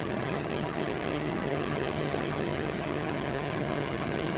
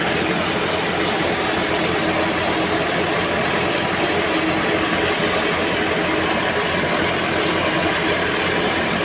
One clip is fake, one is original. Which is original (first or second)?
second